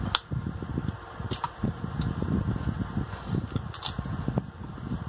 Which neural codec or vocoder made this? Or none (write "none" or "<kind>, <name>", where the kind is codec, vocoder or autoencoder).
none